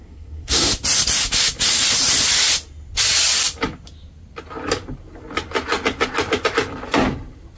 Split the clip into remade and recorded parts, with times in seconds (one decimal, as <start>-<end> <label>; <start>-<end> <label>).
0.0-0.7 remade; 0.7-7.6 recorded